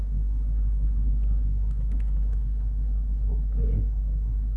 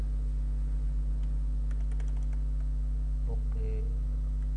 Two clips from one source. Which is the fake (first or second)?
first